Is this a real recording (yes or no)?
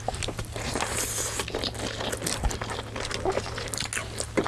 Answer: yes